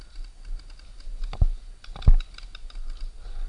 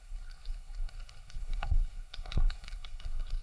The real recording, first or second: first